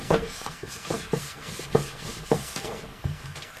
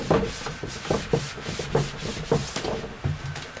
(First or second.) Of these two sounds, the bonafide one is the second